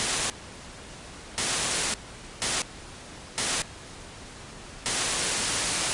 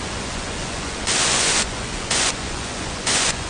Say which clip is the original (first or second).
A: first